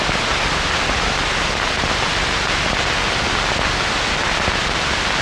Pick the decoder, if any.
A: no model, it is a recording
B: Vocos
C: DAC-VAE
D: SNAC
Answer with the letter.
A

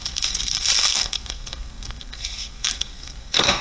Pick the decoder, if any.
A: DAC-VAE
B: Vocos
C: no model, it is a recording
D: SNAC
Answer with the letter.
D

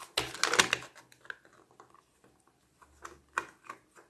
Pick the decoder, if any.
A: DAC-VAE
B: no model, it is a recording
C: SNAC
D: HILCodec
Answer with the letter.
B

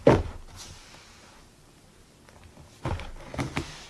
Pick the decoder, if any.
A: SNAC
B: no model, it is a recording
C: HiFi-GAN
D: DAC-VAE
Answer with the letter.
B